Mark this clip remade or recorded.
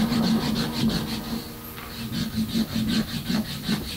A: recorded